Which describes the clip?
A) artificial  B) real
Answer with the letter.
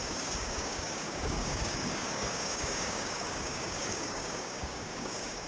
A